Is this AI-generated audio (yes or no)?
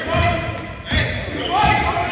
no